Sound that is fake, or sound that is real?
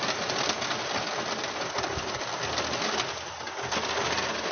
real